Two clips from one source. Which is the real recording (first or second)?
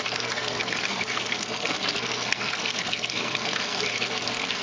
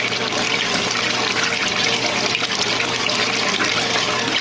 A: second